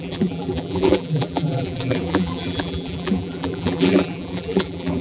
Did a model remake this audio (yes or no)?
yes